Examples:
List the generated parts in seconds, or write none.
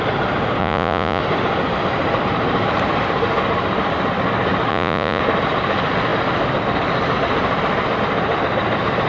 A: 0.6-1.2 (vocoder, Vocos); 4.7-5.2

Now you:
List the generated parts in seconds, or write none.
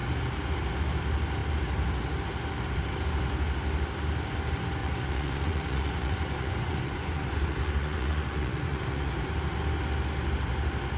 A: 4.8-9.1 (vocoder, Vocos)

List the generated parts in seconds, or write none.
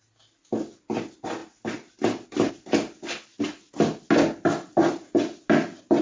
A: none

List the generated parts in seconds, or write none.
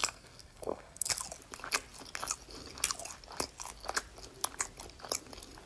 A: 0.0-1.1 (codec, SNAC)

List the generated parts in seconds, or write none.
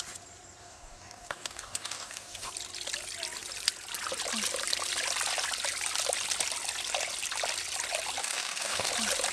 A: 0.6-2.5 (codec, DAC); 8.2-8.9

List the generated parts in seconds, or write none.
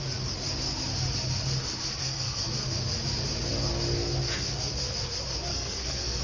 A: 2.0-2.5 (codec, SNAC); 5.5-6.2